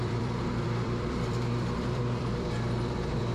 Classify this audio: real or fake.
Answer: fake